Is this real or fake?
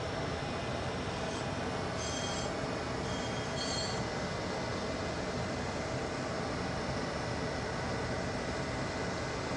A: real